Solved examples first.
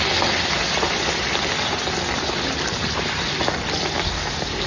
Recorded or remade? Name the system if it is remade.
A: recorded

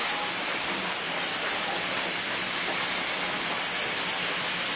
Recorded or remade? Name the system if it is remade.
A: recorded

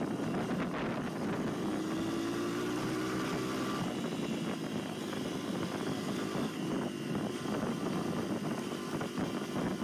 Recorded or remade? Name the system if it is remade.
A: recorded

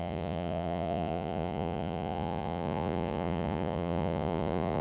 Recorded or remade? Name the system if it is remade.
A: remade, vocoder, Vocos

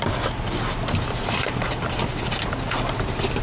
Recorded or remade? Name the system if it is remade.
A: recorded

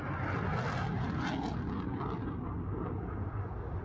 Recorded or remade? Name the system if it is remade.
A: recorded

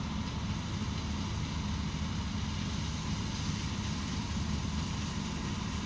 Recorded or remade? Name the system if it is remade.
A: recorded